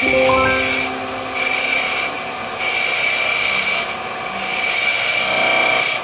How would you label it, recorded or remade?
recorded